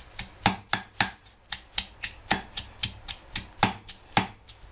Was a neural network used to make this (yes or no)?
no